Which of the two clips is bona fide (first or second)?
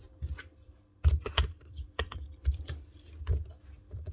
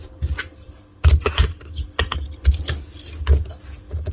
second